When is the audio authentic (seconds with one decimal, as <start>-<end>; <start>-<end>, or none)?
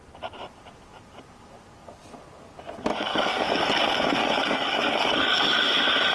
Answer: 0.0-2.9; 3.6-4.2; 5.6-6.1